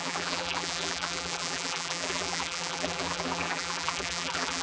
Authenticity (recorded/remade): remade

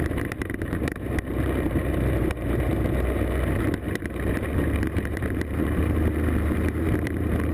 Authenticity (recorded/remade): remade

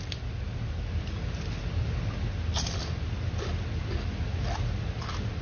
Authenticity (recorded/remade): recorded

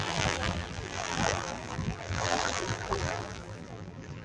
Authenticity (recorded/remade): remade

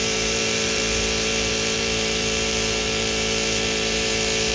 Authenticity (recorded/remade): remade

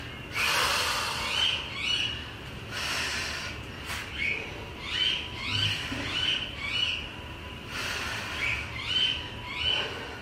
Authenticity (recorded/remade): recorded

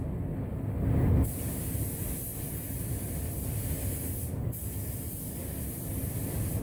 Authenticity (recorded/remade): recorded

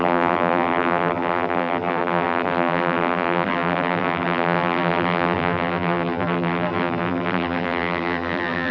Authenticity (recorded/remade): remade